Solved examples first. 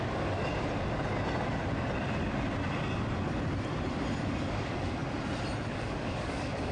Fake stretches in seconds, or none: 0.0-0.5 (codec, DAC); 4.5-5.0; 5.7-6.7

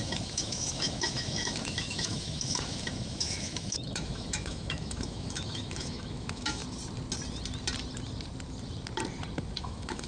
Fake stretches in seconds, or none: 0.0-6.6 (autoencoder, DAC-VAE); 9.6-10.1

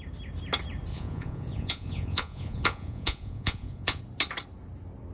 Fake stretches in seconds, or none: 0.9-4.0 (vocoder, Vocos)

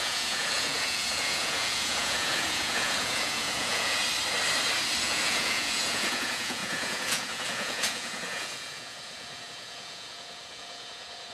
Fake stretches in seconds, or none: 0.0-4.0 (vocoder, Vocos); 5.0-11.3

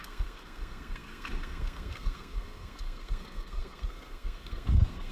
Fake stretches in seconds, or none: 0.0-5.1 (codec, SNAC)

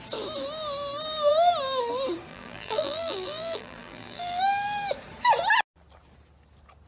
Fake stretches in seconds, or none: 2.3-4.4 (vocoder, BigVGAN v2)

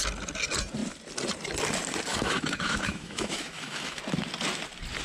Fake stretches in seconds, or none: 2.1-4.0 (autoencoder, DAC-VAE)